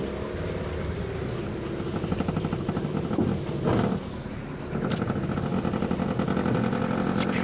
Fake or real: real